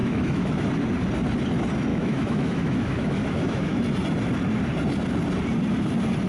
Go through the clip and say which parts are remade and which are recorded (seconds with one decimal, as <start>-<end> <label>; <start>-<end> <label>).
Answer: 0.0-0.7 remade; 0.7-1.9 recorded; 1.9-3.8 remade; 3.8-6.3 recorded